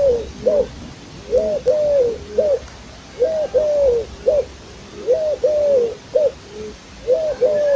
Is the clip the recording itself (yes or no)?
yes